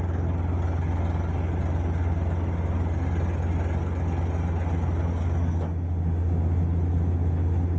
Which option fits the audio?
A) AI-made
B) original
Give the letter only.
B